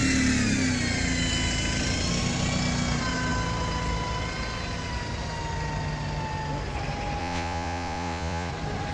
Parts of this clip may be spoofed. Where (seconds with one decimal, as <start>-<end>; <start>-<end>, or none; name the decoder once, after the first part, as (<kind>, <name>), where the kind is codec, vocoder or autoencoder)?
7.2-8.5 (vocoder, Vocos)